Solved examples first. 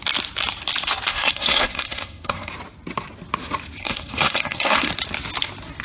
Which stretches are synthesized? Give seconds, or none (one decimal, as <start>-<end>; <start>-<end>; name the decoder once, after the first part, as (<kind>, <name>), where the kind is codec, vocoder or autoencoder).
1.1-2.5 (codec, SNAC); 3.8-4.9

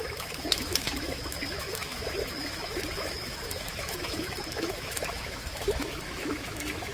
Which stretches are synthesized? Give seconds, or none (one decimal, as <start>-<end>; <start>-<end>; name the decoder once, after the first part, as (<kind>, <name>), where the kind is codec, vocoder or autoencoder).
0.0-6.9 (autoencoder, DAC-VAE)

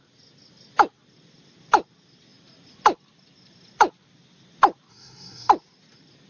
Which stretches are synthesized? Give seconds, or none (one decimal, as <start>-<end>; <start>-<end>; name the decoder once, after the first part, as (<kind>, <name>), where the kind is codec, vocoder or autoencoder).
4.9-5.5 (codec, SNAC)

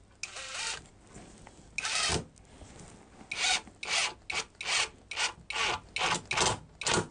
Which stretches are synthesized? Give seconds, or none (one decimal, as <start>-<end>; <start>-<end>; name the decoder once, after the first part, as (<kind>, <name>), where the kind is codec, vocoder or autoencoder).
none

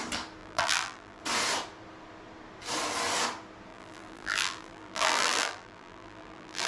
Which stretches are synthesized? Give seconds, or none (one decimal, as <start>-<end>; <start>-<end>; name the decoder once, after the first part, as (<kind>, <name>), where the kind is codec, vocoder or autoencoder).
0.4-1.2 (vocoder, BigVGAN v2); 3.7-6.7

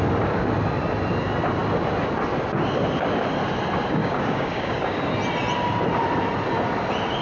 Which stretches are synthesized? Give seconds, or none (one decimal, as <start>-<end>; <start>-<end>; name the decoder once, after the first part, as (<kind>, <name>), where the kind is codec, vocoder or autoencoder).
4.0-5.0 (codec, DAC)

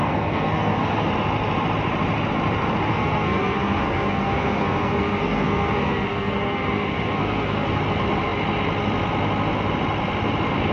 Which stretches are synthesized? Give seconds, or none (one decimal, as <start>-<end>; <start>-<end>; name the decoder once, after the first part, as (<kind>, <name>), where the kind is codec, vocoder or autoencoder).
0.0-1.1 (codec, SNAC); 2.9-7.8

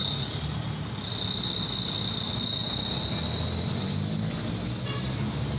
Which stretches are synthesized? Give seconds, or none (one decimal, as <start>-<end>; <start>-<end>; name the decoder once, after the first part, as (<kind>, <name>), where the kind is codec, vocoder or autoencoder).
none